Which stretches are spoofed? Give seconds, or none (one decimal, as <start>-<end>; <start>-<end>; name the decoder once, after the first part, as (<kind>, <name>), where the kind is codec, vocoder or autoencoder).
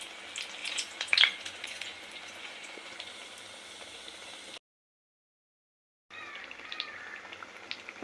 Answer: 0.6-3.1 (vocoder, Vocos)